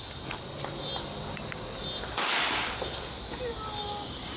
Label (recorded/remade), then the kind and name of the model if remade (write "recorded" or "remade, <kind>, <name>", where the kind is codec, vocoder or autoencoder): recorded